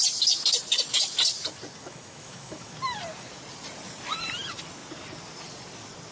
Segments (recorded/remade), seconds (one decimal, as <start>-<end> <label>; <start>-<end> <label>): 0.0-1.8 recorded; 1.8-2.7 remade; 2.7-6.1 recorded